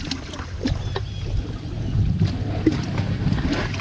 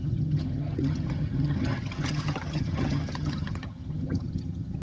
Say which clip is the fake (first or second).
second